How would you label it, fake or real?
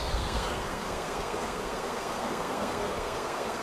fake